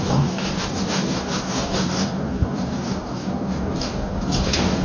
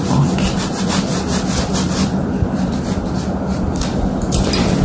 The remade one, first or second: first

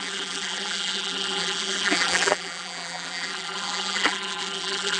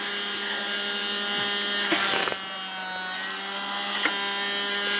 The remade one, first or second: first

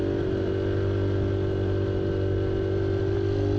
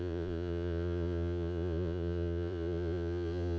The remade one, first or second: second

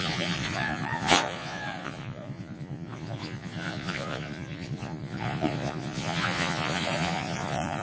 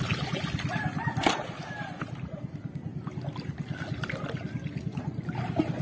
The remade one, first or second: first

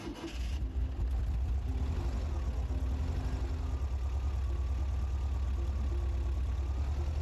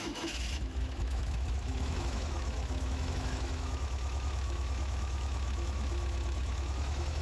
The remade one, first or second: second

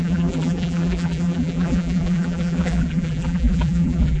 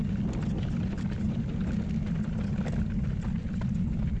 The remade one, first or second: first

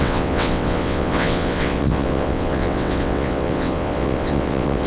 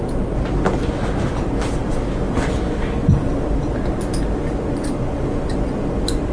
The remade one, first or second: first